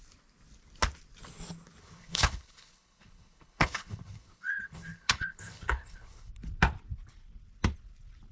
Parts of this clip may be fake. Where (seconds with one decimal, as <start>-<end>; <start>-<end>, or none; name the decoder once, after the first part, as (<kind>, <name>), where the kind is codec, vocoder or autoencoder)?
1.8-6.3 (codec, HILCodec)